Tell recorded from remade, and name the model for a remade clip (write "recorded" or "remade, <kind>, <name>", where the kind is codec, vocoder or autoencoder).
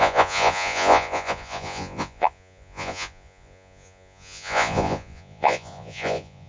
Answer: remade, vocoder, Vocos